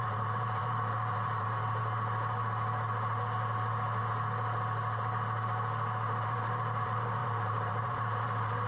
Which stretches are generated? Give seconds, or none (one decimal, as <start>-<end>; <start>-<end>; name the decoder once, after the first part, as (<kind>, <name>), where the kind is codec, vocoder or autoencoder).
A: 0.0-1.8 (vocoder, BigVGAN v2); 6.2-8.7